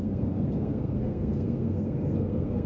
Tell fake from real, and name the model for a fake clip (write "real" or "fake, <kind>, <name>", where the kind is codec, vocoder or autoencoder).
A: fake, codec, SNAC